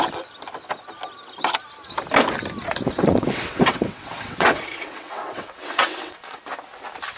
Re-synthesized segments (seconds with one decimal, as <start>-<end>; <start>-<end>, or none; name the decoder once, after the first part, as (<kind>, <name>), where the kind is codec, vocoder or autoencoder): 2.9-6.4 (vocoder, WaveNeXt)